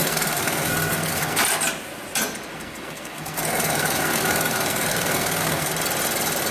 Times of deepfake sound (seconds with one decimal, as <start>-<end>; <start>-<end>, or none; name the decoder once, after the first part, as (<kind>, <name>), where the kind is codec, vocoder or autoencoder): 0.0-1.4 (codec, SNAC); 2.5-5.7